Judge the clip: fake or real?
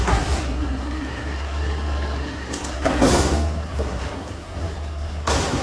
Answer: fake